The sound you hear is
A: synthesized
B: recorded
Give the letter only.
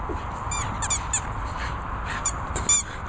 B